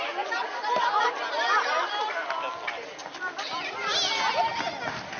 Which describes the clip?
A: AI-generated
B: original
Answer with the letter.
B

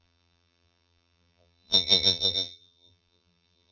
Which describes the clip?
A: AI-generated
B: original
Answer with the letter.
A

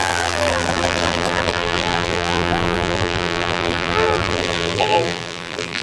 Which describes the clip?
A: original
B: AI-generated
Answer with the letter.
B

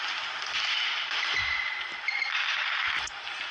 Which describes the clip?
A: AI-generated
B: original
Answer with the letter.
B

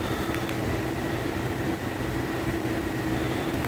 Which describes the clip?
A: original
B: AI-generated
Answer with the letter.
A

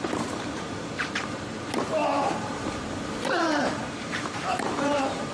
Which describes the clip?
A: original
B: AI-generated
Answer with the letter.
B